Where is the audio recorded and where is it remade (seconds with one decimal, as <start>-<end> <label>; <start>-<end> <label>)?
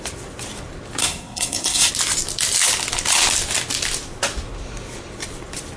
0.0-1.0 recorded; 1.0-1.9 remade; 1.9-5.8 recorded